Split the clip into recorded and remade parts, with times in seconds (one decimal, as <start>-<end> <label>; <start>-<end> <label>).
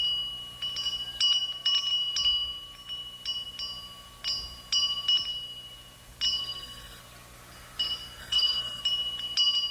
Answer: 0.0-6.4 recorded; 6.4-7.0 remade; 7.0-8.2 recorded; 8.2-8.8 remade; 8.8-9.7 recorded